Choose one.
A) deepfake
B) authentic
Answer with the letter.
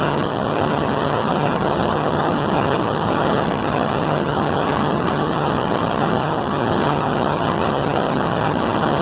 A